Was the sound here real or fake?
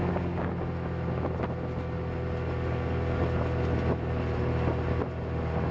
real